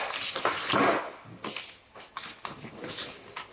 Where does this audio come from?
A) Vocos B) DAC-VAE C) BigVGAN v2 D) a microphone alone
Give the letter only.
D